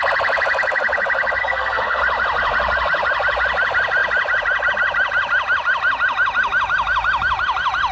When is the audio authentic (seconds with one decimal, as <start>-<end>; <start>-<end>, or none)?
0.0-1.4; 2.0-7.9